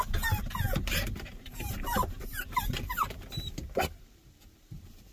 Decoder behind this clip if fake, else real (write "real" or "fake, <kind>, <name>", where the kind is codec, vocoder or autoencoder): fake, vocoder, BigVGAN v2